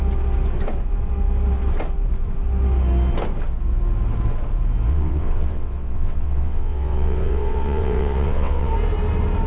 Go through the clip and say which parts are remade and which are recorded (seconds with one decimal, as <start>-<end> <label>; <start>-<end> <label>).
0.0-4.9 recorded; 4.9-8.7 remade; 8.7-9.5 recorded